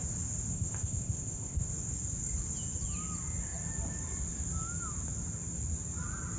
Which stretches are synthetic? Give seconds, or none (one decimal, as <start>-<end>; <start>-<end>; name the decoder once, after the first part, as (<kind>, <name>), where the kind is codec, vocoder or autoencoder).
0.5-1.7 (codec, ZipCodec)